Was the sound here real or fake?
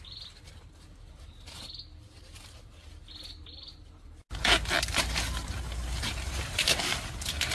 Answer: real